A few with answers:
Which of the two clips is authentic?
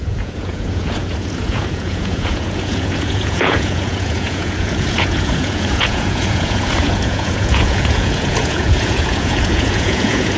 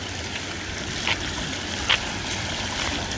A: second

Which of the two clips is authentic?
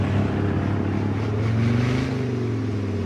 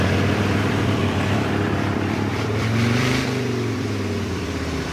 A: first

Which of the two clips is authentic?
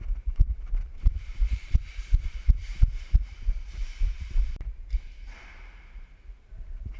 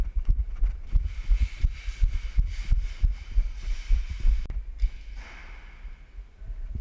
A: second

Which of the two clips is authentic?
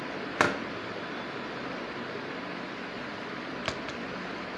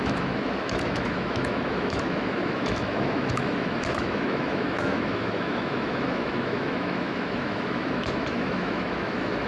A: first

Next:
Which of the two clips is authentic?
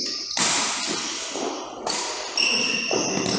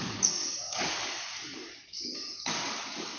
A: first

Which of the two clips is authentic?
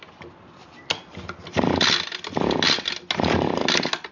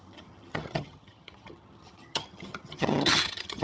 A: first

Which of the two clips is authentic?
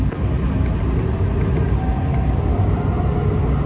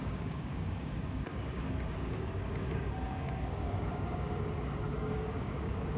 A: first